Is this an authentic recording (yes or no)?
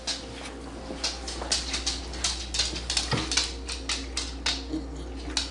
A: yes